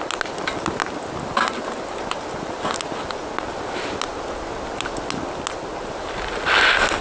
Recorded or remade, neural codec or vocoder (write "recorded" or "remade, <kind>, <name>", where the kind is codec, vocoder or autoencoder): recorded